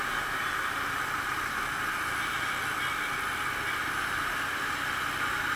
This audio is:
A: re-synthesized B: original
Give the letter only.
B